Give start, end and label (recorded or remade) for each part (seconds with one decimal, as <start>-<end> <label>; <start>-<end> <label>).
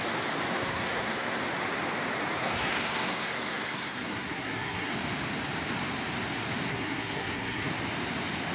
0.0-0.5 recorded; 0.5-1.4 remade; 1.4-2.4 recorded; 2.4-4.9 remade; 4.9-6.7 recorded; 6.7-7.7 remade; 7.7-8.5 recorded